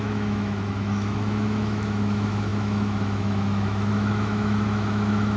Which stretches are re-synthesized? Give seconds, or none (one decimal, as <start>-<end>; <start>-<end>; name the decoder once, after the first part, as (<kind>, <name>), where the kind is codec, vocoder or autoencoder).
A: 0.0-5.4 (autoencoder, DAC-VAE)